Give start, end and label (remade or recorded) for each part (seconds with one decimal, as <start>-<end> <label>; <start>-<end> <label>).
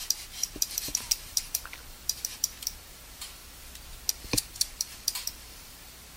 0.0-0.5 recorded; 0.5-3.4 remade; 3.4-4.1 recorded; 4.1-6.2 remade